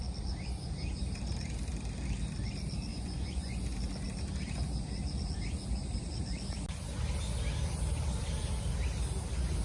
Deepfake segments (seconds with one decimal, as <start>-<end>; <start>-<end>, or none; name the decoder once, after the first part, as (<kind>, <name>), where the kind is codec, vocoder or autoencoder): 2.9-3.6 (vocoder, Vocos)